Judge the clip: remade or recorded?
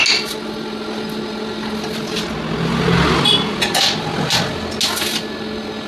recorded